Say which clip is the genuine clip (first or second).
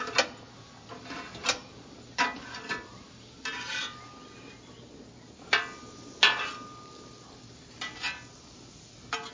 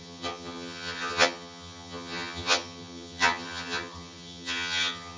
first